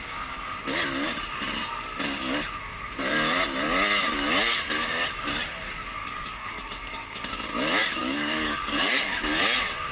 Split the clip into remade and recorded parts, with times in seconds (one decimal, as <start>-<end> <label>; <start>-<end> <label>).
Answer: 0.0-6.0 recorded; 6.0-7.3 remade; 7.3-7.8 recorded; 7.8-9.2 remade; 9.2-9.9 recorded